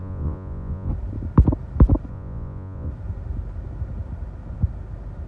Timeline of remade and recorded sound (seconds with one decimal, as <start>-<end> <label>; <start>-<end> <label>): 0.0-0.9 remade; 0.9-2.1 recorded; 2.1-2.9 remade; 2.9-5.3 recorded

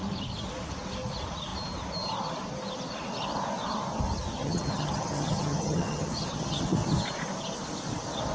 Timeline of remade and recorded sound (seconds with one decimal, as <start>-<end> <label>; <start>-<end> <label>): 0.0-4.4 recorded; 4.4-6.6 remade; 6.6-8.3 recorded

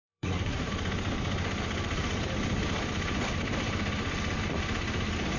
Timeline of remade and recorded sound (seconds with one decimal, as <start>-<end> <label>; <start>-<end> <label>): 0.0-0.7 remade; 0.7-5.4 recorded

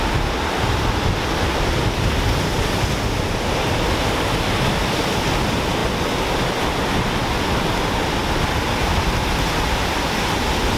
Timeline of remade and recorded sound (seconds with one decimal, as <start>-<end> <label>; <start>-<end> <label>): 0.0-10.8 recorded

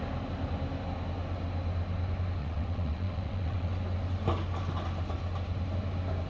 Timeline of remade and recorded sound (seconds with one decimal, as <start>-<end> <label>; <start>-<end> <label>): 0.0-2.4 recorded; 2.4-3.7 remade; 3.7-6.3 recorded

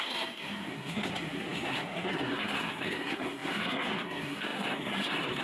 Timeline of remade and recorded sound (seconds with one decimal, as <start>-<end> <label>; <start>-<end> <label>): 0.0-5.4 remade

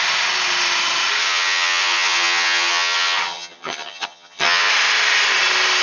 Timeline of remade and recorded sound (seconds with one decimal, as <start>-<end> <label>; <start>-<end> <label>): 0.0-1.2 recorded; 1.2-4.7 remade; 4.7-5.8 recorded

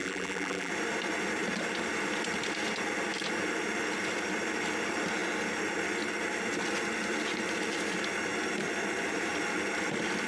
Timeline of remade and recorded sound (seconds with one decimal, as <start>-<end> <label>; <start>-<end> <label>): 0.0-0.7 remade; 0.7-10.3 recorded